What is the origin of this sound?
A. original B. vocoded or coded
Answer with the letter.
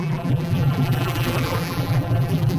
B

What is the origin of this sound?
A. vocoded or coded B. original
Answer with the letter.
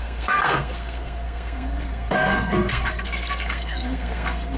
A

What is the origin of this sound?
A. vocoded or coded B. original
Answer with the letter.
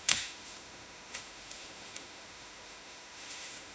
A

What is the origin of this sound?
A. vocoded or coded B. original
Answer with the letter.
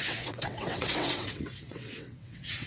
A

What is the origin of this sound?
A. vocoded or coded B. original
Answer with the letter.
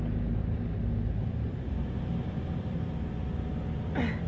B